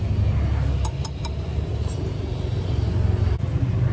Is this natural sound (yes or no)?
yes